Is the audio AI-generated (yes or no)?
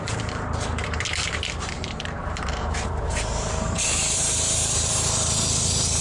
yes